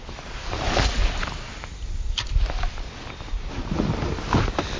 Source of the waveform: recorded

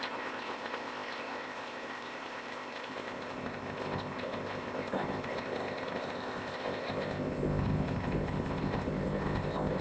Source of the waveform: remade